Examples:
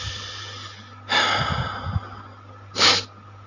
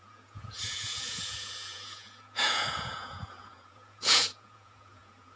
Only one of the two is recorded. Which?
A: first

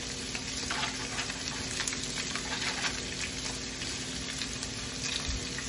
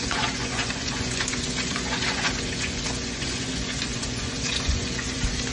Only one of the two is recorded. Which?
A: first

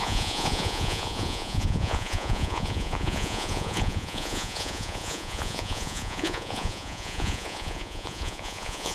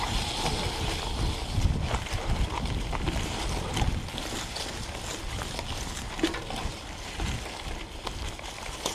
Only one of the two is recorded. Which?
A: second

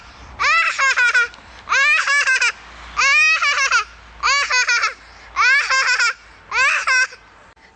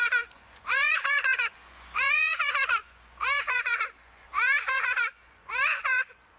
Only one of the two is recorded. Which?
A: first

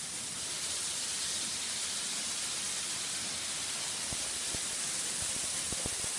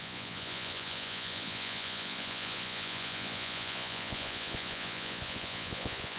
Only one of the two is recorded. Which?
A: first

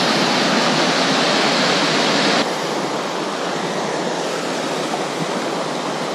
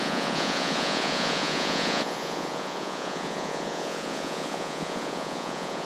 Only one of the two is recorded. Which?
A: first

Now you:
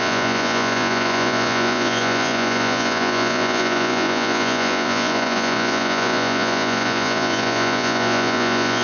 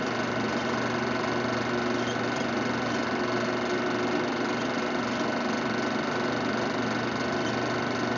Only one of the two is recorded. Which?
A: second